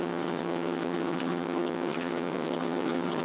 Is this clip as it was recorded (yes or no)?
no